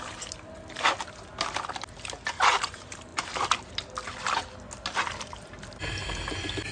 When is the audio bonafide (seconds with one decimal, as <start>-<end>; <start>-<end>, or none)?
0.0-6.7